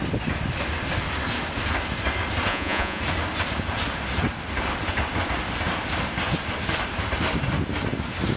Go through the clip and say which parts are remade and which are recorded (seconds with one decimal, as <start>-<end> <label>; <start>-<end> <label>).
0.0-2.5 recorded; 2.5-3.0 remade; 3.0-8.4 recorded